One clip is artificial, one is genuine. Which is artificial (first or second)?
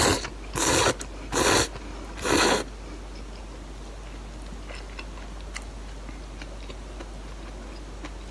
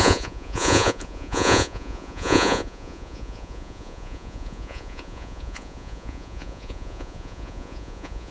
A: second